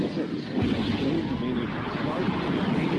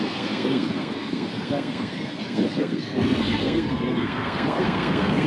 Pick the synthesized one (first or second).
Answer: second